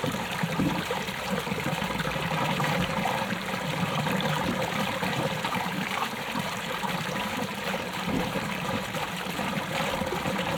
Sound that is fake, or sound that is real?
fake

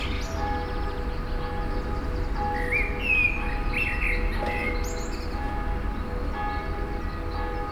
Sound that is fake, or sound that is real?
real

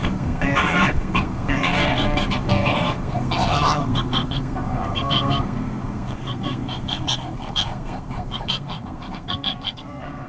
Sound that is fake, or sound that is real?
fake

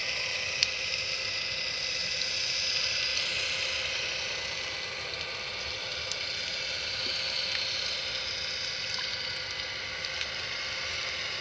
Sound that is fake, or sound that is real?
real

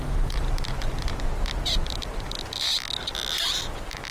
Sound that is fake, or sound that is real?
real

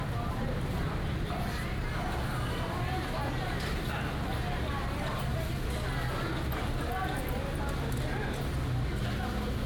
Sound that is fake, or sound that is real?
real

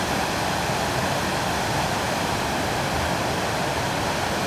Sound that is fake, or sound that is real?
real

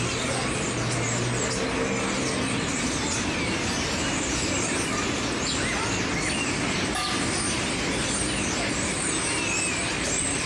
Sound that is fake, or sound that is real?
real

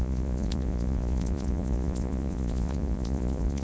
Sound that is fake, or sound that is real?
fake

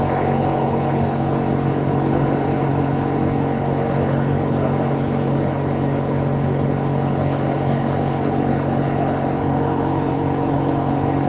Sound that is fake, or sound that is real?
fake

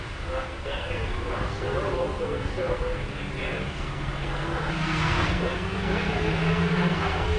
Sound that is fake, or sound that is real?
fake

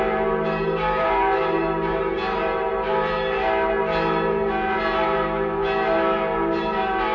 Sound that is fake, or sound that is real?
real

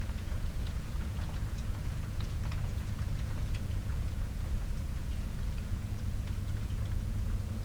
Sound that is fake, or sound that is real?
fake